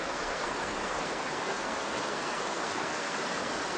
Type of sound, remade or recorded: remade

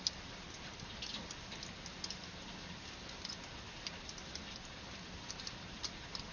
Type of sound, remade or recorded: recorded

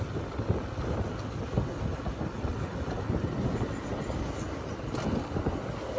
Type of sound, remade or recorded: recorded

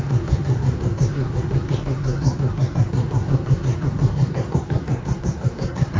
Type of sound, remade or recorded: remade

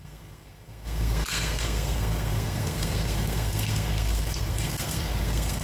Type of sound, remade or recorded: remade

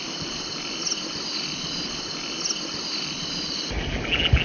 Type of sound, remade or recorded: recorded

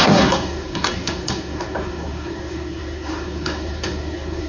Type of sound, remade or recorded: remade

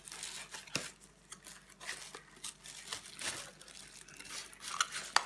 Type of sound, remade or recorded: recorded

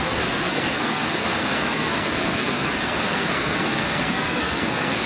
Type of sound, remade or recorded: remade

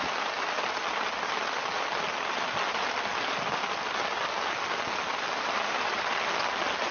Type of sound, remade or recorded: recorded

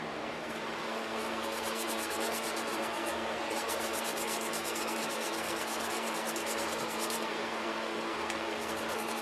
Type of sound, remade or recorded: remade